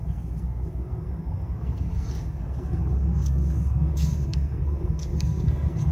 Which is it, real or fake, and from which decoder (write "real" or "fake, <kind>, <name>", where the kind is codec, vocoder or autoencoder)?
fake, codec, SNAC